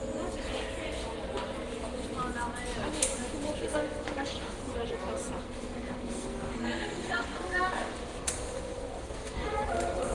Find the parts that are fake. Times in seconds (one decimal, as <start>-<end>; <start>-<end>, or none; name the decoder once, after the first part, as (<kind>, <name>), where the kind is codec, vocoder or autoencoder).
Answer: 3.6-4.7 (codec, SNAC); 5.4-10.1

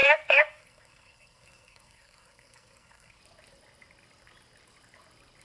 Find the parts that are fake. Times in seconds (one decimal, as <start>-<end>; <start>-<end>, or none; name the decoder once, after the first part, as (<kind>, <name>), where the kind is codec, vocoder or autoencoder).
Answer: 0.0-3.2 (codec, SNAC)

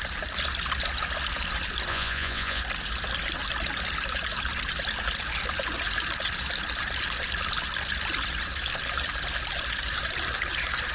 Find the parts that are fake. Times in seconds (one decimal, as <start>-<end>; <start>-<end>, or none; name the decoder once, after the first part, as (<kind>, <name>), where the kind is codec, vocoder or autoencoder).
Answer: 1.9-2.6 (vocoder, Vocos)

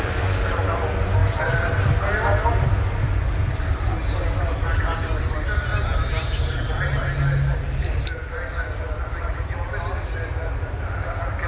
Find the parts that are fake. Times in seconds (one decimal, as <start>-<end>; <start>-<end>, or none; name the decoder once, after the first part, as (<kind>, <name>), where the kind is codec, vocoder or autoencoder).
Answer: none

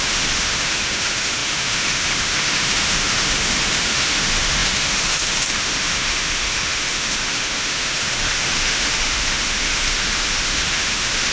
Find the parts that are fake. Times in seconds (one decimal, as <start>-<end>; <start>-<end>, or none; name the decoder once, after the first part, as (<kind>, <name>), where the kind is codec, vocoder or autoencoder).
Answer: 0.0-11.3 (autoencoder, DAC-VAE)

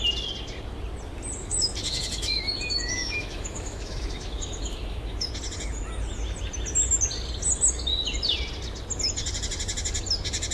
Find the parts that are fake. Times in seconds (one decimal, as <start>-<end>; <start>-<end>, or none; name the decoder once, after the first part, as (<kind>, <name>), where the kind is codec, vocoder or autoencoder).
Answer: 1.4-5.3 (autoencoder, DAC-VAE)

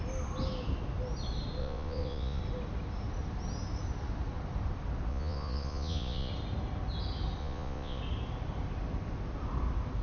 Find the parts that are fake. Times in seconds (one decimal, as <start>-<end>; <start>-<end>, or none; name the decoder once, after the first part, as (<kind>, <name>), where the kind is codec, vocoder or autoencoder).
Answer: 1.6-2.4 (vocoder, Vocos); 5.1-6.3; 7.4-8.0